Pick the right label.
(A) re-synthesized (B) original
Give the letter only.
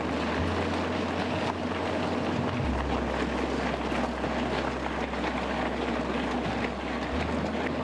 B